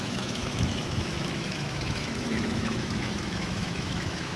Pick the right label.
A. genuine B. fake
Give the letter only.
B